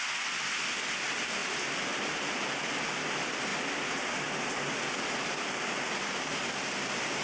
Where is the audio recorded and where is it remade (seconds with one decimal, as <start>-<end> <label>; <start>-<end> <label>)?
0.0-1.4 recorded; 1.4-2.6 remade; 2.6-7.2 recorded